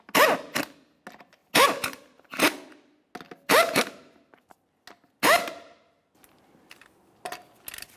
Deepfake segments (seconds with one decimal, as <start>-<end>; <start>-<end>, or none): none